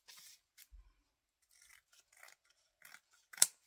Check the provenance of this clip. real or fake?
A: fake